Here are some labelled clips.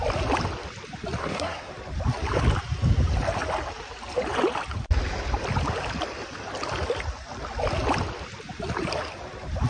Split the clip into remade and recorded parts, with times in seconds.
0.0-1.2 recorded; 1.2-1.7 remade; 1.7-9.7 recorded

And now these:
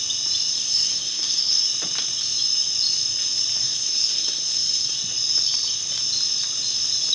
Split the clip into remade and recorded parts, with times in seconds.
0.0-0.5 recorded; 0.5-1.6 remade; 1.6-3.6 recorded; 3.6-5.0 remade; 5.0-7.1 recorded

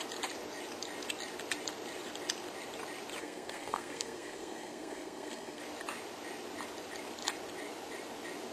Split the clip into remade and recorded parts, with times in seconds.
0.0-3.2 recorded; 3.2-5.6 remade; 5.6-8.5 recorded

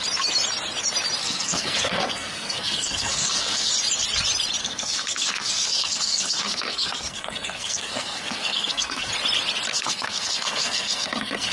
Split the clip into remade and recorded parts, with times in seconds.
0.0-1.2 recorded; 1.2-3.7 remade; 3.7-4.6 recorded; 4.6-9.1 remade; 9.1-9.7 recorded; 9.7-11.5 remade